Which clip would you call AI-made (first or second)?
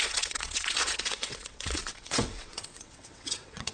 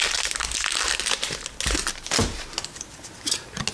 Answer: first